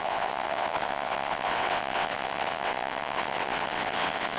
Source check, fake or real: fake